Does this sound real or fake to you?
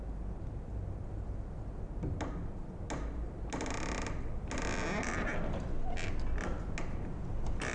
real